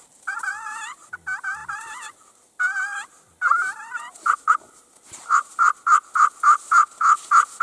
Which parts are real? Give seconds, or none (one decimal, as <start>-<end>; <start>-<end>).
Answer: 0.0-0.5; 1.1-1.6; 4.7-7.6